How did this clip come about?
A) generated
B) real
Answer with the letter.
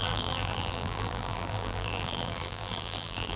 A